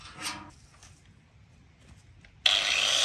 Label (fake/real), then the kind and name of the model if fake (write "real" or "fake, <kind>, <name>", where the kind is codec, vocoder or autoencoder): real